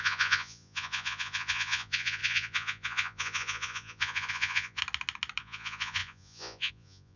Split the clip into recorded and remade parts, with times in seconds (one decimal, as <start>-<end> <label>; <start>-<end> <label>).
0.0-4.8 remade; 4.8-5.4 recorded; 5.4-7.2 remade